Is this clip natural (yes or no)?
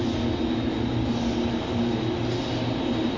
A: yes